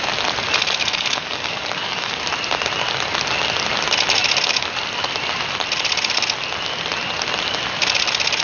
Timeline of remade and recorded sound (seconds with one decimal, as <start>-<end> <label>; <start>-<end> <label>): 0.0-0.8 recorded; 0.8-2.2 remade; 2.2-8.4 recorded